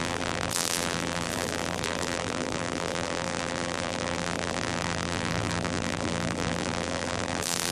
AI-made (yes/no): yes